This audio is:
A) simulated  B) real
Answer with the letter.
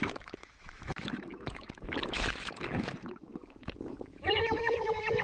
A